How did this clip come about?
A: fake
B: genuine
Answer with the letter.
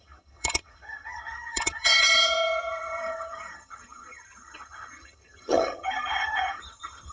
A